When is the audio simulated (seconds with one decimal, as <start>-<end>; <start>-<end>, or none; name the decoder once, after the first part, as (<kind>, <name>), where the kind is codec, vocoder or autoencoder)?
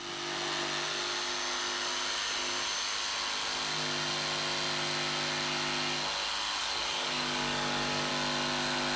6.6-8.1 (codec, DAC)